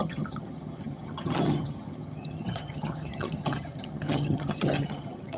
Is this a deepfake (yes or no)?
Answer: yes